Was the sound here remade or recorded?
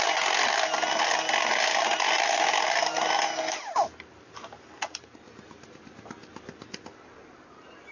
recorded